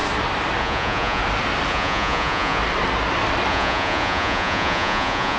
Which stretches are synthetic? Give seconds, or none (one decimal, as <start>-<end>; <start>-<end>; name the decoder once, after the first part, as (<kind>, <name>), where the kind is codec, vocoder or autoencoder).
0.6-1.2 (vocoder, Vocos); 1.7-2.6; 3.5-5.4